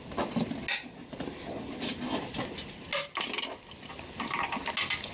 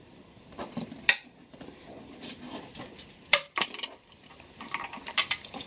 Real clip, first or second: first